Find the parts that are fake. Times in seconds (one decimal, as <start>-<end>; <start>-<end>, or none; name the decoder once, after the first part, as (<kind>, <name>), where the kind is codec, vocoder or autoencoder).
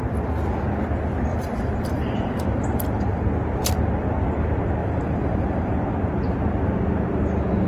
1.3-3.2 (vocoder, BigVGAN v2); 4.8-5.7